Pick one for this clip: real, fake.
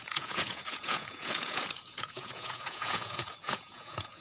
fake